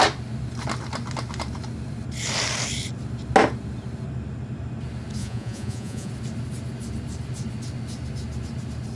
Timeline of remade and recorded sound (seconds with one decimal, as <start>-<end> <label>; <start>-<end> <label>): 0.0-5.2 recorded; 5.2-6.1 remade; 6.1-9.0 recorded